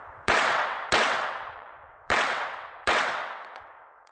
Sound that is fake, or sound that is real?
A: fake